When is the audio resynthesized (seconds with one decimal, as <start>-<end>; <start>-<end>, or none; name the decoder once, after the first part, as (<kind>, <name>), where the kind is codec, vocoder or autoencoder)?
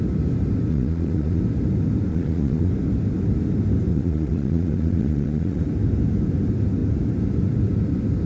0.7-1.4 (vocoder, Vocos); 2.1-2.7; 3.9-5.6